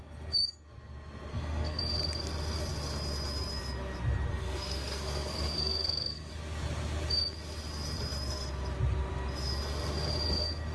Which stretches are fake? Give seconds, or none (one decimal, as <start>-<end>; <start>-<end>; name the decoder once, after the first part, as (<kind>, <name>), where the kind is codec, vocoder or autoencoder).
1.3-1.8 (codec, SNAC); 4.3-6.3